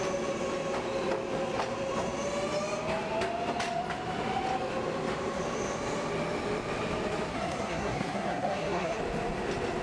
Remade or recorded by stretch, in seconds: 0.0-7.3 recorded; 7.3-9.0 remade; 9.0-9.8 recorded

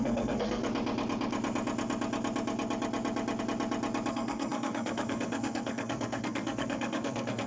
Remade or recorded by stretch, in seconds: 0.0-0.6 remade; 0.6-4.1 recorded; 4.1-7.5 remade

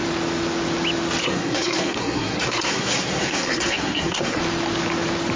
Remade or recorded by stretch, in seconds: 0.0-1.2 recorded; 1.2-4.4 remade; 4.4-5.4 recorded